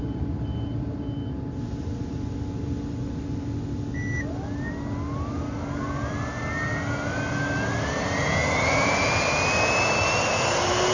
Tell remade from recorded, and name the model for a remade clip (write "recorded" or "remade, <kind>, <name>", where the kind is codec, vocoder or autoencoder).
recorded